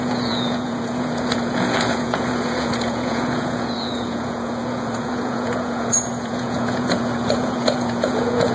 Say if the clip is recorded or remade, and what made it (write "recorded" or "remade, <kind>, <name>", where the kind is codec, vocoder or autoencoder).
remade, vocoder, Vocos